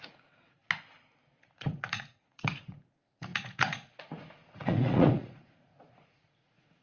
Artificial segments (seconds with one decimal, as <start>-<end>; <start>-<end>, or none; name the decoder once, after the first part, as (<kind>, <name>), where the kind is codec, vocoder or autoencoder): 0.0-0.6 (vocoder, Vocos); 1.6-6.8